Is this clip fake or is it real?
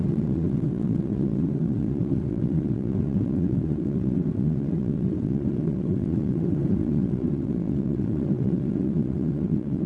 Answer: fake